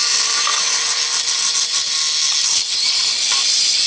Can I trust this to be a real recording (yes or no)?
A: yes